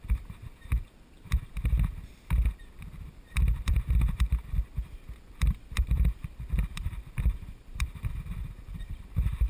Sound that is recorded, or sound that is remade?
remade